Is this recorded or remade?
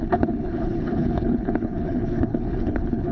remade